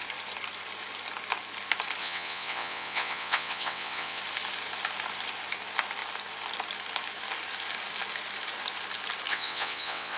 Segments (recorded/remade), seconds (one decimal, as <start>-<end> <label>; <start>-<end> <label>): 0.0-2.0 recorded; 2.0-4.2 remade; 4.2-9.3 recorded; 9.3-10.2 remade